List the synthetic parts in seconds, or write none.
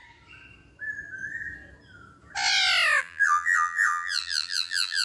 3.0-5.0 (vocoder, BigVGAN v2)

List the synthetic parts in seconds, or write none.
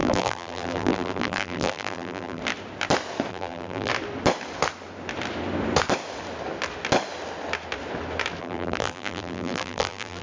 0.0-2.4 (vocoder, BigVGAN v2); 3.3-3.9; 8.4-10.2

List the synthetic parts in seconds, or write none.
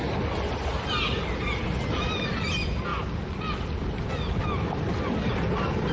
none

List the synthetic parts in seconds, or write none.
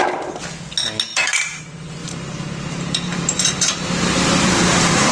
1.1-1.6 (vocoder, BigVGAN v2); 2.0-5.1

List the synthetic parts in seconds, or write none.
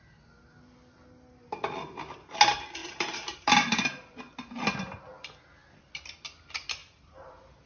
2.8-4.2 (vocoder, BigVGAN v2); 6.8-7.3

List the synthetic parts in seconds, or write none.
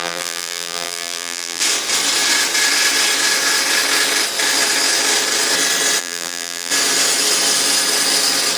0.0-1.6 (vocoder, BigVGAN v2); 6.0-6.7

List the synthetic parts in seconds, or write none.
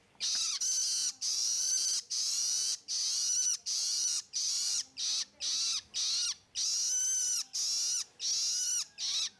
1.0-5.2 (vocoder, BigVGAN v2)